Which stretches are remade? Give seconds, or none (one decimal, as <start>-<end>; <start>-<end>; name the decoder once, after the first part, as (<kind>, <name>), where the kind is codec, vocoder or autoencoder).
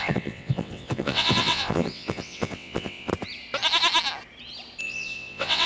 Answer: 0.0-3.1 (vocoder, WaveNeXt); 4.8-5.7